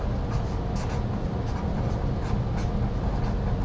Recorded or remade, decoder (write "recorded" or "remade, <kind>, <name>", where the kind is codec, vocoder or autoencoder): recorded